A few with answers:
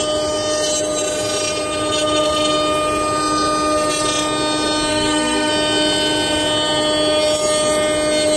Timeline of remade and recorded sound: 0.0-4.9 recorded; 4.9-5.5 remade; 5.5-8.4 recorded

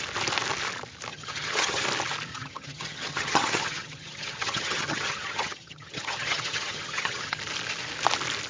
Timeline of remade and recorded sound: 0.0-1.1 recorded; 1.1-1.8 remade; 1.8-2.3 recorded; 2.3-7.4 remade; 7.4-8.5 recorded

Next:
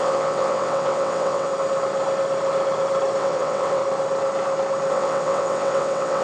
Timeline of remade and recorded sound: 0.0-1.5 remade; 1.5-3.2 recorded; 3.2-3.8 remade; 3.8-4.9 recorded; 4.9-6.2 remade